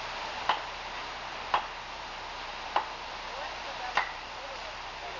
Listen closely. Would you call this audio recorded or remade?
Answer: recorded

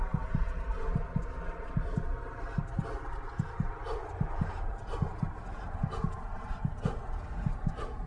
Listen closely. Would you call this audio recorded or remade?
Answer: recorded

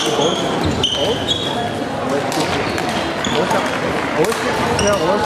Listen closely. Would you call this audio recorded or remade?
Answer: recorded